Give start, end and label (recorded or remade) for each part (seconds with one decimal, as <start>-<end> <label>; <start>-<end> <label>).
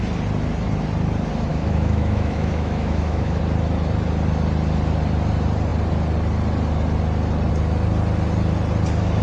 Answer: 0.0-1.5 recorded; 1.5-3.4 remade; 3.4-9.2 recorded